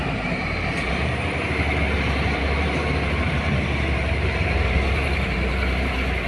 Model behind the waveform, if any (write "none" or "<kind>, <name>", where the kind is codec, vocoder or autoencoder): vocoder, BigVGAN v2